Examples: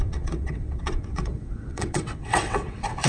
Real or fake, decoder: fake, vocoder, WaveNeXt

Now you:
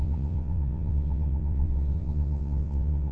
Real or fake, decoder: fake, vocoder, WaveNeXt